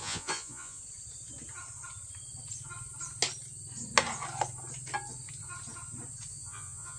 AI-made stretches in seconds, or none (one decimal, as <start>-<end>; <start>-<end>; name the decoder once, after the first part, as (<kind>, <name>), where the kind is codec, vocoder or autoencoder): 0.0-0.8 (vocoder, Vocos); 6.3-7.0

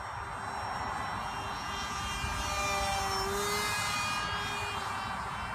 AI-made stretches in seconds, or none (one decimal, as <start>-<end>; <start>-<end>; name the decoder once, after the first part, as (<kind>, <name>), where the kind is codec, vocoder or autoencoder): 1.2-2.1 (vocoder, Vocos); 4.6-5.5

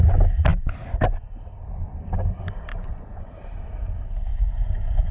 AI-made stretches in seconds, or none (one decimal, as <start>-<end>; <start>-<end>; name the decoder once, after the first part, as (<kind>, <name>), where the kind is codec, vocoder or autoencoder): 2.7-3.3 (vocoder, Vocos); 4.3-5.1

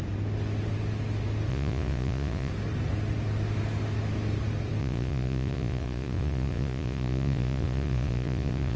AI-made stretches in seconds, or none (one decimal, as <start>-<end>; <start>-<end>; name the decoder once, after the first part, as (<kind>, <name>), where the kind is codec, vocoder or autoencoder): 1.5-2.5 (vocoder, Vocos); 4.8-8.8

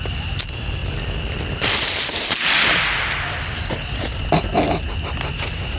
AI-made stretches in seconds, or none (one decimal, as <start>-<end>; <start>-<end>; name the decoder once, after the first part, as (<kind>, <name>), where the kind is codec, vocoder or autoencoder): none

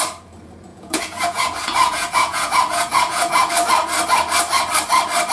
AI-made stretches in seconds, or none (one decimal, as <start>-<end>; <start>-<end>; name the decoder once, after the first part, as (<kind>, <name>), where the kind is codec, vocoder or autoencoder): 0.7-3.5 (vocoder, Vocos)

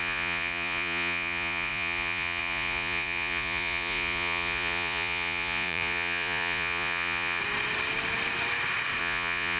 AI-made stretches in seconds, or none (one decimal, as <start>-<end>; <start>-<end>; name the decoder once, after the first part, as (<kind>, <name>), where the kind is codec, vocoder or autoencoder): 0.0-7.4 (vocoder, Vocos); 9.0-9.6

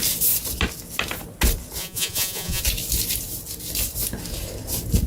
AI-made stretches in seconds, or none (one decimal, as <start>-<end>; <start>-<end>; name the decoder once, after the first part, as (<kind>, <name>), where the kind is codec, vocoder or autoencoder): 1.8-2.6 (vocoder, Vocos)